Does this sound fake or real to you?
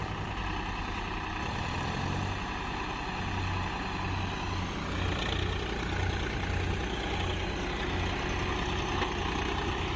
real